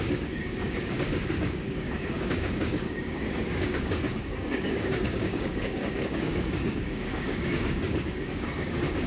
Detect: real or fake fake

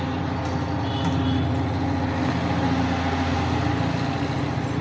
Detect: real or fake real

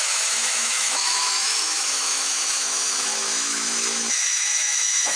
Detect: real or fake fake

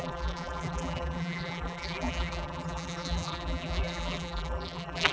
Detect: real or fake fake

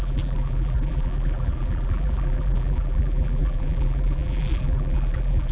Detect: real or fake fake